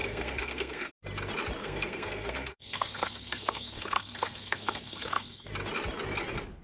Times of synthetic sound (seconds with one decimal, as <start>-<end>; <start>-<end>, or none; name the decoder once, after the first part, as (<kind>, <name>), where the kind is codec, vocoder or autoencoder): 0.0-0.9 (codec, SNAC); 1.6-5.5